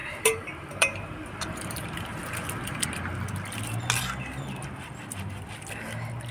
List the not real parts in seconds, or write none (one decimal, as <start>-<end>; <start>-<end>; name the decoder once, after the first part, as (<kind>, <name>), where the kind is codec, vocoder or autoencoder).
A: 0.0-2.2 (vocoder, BigVGAN v2)